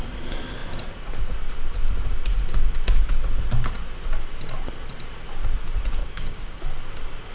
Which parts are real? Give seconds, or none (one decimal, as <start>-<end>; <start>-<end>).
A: 0.0-6.0; 6.6-7.3